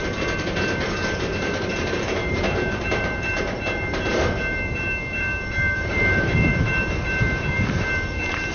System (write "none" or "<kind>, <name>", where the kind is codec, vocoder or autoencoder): vocoder, BigVGAN v2